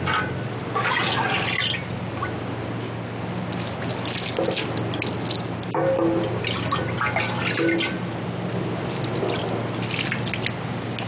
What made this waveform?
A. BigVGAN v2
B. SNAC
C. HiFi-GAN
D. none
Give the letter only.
D